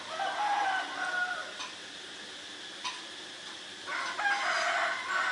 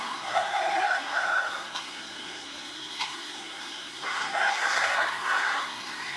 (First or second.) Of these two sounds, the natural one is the first